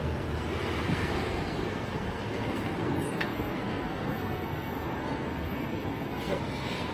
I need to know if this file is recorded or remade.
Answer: remade